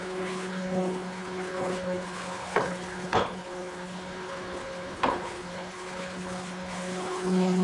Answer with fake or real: fake